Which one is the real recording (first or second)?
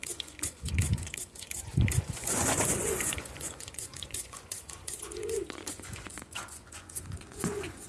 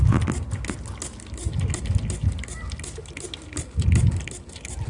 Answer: second